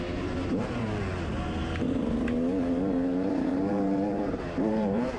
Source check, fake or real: fake